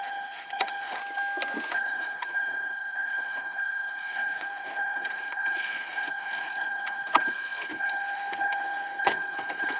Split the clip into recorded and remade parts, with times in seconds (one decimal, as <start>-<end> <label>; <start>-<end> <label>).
0.0-1.0 remade; 1.0-1.7 recorded; 1.7-9.8 remade